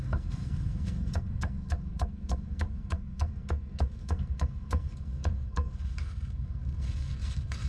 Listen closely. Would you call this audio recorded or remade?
remade